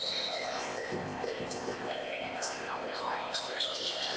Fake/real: fake